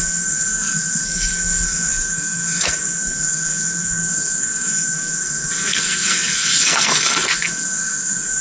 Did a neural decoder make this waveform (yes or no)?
yes